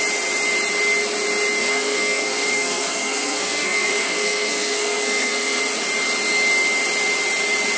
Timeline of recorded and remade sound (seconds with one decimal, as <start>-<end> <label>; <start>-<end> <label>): 0.0-1.6 recorded; 1.6-5.6 remade; 5.6-7.8 recorded